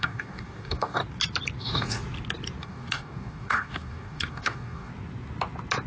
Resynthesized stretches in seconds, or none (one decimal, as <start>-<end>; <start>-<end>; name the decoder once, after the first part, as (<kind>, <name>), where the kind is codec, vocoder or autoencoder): 0.0-1.0 (codec, DAC); 1.6-2.0; 2.6-4.9